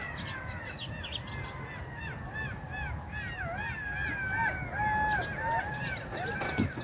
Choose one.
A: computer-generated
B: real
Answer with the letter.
B